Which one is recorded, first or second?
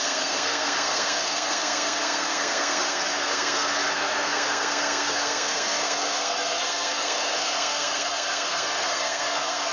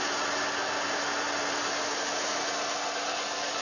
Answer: second